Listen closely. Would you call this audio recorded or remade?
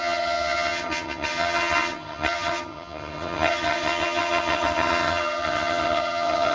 remade